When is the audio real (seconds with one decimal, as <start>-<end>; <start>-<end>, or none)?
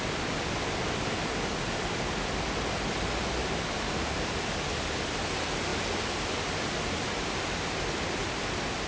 0.0-8.9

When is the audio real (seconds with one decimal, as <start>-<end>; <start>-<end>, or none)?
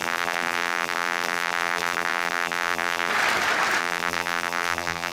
3.1-3.8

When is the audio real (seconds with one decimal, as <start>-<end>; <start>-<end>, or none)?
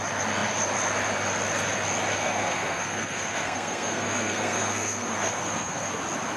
0.0-2.2; 6.0-6.4